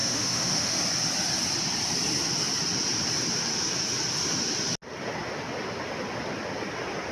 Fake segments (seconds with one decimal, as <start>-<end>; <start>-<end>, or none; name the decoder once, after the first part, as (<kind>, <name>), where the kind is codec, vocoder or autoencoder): 0.0-0.8 (autoencoder, DAC-VAE)